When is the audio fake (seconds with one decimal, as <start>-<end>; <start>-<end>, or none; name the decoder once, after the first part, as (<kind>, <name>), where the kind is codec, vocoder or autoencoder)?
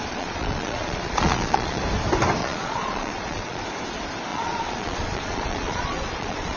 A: 0.0-1.8 (vocoder, Vocos); 2.4-3.6; 4.3-6.6